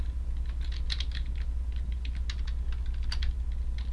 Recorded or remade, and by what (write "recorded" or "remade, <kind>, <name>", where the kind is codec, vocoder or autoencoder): recorded